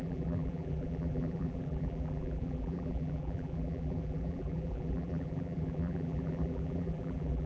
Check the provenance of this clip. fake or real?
fake